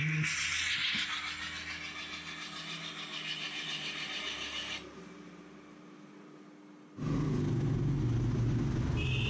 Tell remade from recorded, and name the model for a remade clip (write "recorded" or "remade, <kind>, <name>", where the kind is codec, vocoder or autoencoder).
recorded